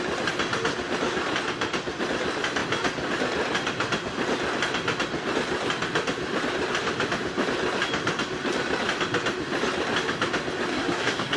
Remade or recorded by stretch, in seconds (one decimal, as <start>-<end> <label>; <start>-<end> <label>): 0.0-10.7 recorded; 10.7-11.4 remade